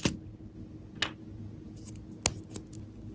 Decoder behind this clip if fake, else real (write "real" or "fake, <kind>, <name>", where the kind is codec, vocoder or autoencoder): real